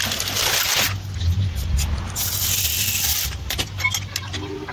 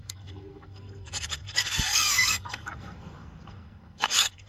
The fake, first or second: second